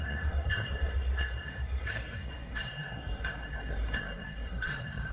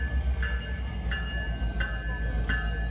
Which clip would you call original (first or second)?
second